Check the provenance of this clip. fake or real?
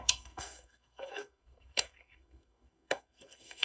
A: fake